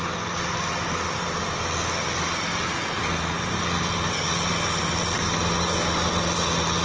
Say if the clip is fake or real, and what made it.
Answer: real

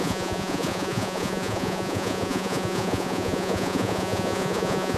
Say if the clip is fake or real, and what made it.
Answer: fake, vocoder, Vocos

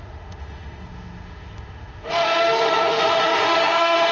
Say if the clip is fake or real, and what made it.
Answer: fake, autoencoder, DAC-VAE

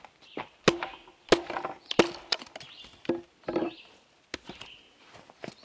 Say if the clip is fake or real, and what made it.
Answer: real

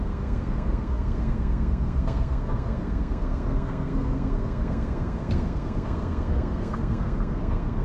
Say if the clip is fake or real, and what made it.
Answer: fake, codec, SNAC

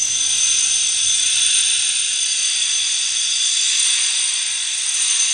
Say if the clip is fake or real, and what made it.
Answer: real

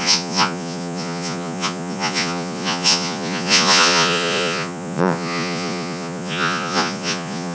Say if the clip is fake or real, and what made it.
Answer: fake, vocoder, Vocos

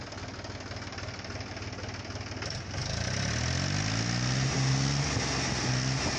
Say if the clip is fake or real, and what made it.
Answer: real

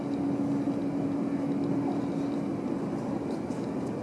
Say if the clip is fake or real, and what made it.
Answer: real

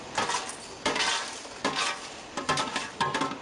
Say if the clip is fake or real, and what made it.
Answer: real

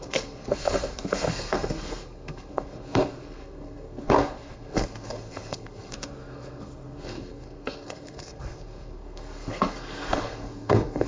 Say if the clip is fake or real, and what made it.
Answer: fake, codec, SNAC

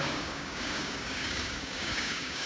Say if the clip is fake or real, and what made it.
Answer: fake, codec, DAC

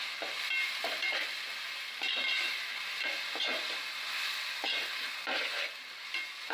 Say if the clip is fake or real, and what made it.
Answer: real